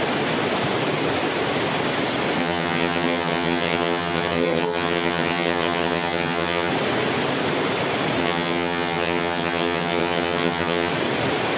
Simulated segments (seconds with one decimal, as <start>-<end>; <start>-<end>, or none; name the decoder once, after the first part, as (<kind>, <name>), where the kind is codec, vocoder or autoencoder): 2.4-6.7 (vocoder, HiFi-GAN); 8.2-10.9